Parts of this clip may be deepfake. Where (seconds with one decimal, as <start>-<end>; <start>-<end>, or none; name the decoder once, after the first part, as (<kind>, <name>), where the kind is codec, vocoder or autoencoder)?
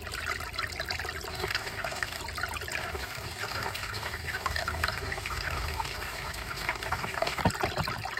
1.3-2.2 (codec, DAC); 2.8-7.4